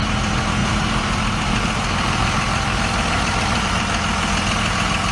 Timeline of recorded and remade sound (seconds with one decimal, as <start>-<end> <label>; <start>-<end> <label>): 0.0-0.6 recorded; 0.6-3.7 remade; 3.7-5.1 recorded